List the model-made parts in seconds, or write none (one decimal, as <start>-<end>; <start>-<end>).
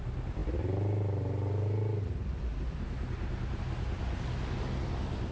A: none